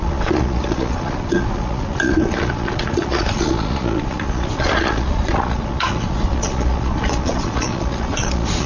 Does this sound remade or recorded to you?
remade